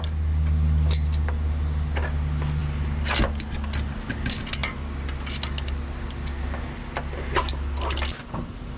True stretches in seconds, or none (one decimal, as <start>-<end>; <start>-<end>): 0.0-8.8